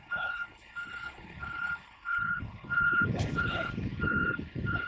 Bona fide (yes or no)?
no